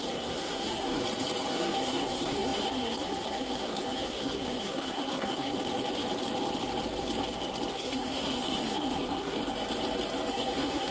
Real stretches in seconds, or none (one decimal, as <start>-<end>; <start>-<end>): 1.0-1.5; 5.5-7.7; 9.4-10.3